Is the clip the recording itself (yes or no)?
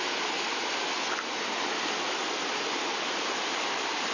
yes